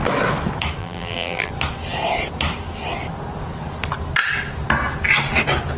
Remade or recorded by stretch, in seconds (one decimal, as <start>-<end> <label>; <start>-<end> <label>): 0.0-0.8 recorded; 0.8-1.5 remade; 1.5-5.8 recorded